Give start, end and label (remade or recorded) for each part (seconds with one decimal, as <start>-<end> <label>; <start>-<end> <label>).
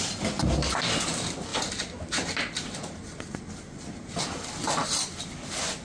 0.0-5.8 recorded